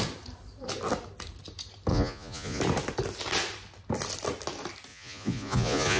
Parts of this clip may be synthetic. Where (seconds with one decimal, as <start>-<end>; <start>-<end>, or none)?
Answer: 1.9-2.6; 4.9-6.0